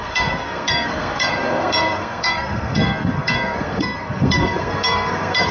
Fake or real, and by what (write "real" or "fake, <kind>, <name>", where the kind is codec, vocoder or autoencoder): fake, codec, SNAC